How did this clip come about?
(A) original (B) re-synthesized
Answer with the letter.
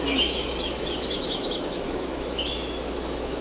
B